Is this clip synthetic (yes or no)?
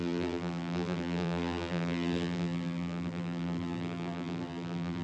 yes